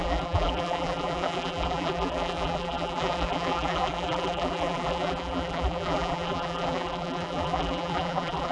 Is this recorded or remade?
remade